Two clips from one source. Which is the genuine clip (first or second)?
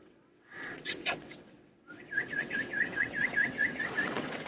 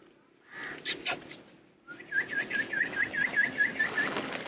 second